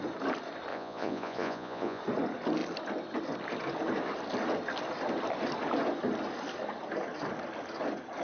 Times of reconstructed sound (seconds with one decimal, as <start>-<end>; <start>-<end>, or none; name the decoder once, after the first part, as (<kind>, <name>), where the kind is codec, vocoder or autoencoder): 0.7-2.0 (vocoder, Vocos)